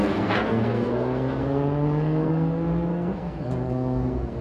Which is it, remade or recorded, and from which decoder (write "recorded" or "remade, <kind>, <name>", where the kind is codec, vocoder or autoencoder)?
remade, codec, SNAC